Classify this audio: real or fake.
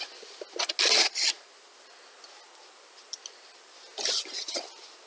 real